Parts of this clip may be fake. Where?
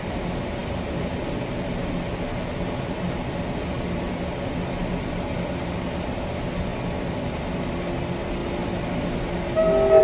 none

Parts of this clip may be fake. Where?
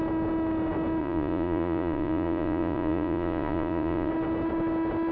1.0-4.1 (vocoder, Vocos)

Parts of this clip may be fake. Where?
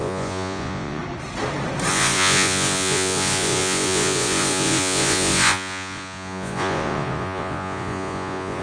0.0-1.0 (vocoder, Vocos); 1.9-8.6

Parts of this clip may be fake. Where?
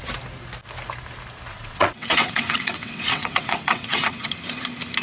1.5-4.3 (vocoder, WaveNeXt)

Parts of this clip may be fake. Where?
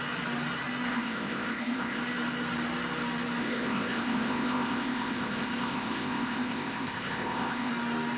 0.9-2.0 (codec, ZipCodec); 3.4-7.7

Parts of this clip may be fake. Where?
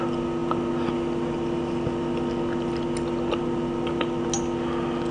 none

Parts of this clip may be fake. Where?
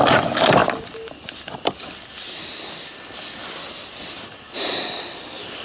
none